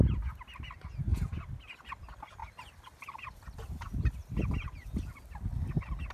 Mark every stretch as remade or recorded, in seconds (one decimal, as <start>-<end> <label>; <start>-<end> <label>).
0.0-6.1 recorded